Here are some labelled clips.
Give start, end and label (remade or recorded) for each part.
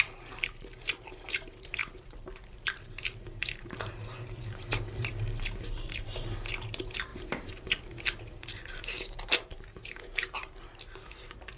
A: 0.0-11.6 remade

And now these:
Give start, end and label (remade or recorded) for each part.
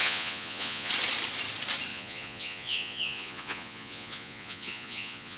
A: 0.0-0.9 remade; 0.9-1.9 recorded; 1.9-5.4 remade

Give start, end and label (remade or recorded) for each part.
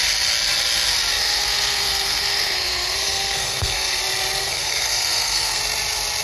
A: 0.0-1.2 recorded; 1.2-4.0 remade; 4.0-4.4 recorded; 4.4-5.6 remade; 5.6-6.2 recorded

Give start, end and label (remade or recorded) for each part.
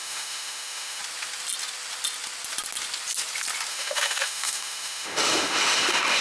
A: 0.0-1.0 remade; 1.0-3.7 recorded; 3.7-6.2 remade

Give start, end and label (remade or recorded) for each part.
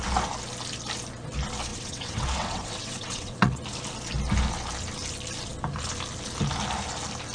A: 0.0-1.7 recorded; 1.7-3.6 remade; 3.6-7.3 recorded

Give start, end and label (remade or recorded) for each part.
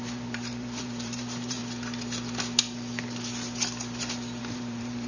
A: 0.0-1.6 remade; 1.6-4.4 recorded; 4.4-5.1 remade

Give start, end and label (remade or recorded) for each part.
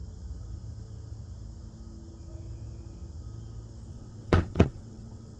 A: 0.0-3.9 recorded; 3.9-5.4 remade